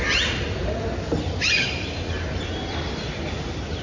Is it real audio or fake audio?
real